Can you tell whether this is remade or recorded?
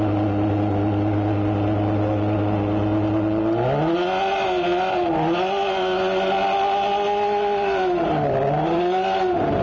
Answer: recorded